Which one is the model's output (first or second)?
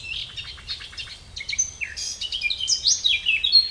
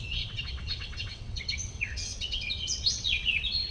second